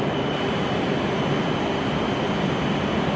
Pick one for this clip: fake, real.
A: real